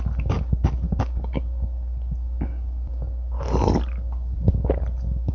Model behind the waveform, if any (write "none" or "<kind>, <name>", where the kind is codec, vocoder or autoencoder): none